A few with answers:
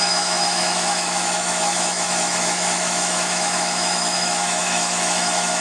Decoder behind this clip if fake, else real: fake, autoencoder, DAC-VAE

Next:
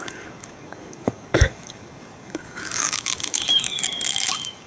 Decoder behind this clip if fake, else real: fake, codec, DAC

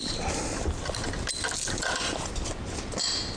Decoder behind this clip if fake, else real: real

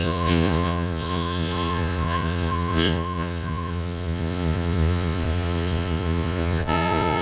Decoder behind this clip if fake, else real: fake, vocoder, Vocos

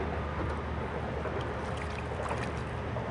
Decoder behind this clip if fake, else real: real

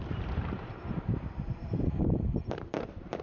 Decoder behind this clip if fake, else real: fake, vocoder, BigVGAN v2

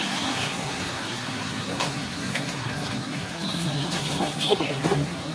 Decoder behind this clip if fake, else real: fake, codec, SNAC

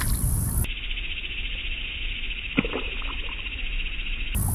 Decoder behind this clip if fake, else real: real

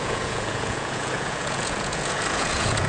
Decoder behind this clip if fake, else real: fake, vocoder, Vocos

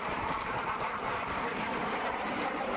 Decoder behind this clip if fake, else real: fake, vocoder, BigVGAN v2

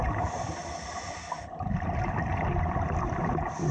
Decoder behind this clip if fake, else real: real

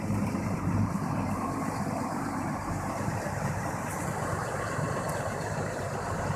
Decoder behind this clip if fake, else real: fake, vocoder, BigVGAN v2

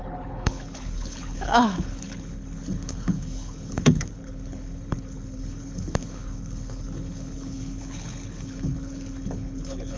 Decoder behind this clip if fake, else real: fake, codec, HILCodec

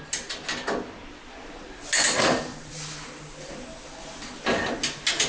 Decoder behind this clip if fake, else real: real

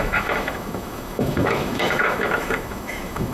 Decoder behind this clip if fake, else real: fake, autoencoder, DAC-VAE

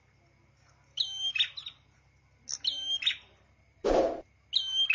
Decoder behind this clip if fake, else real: real